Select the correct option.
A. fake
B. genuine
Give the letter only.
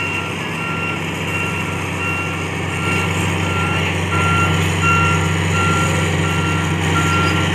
B